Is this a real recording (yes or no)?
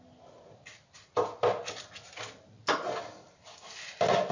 yes